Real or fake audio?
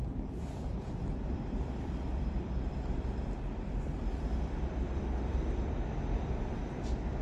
fake